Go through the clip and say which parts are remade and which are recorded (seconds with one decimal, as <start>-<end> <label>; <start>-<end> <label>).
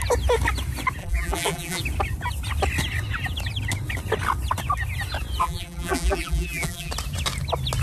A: 0.0-1.0 recorded; 1.0-1.8 remade; 1.8-5.4 recorded; 5.4-6.9 remade; 6.9-7.8 recorded